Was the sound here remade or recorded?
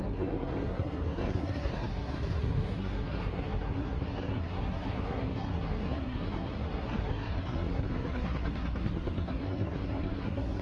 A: remade